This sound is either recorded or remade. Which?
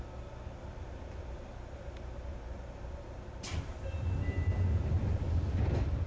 recorded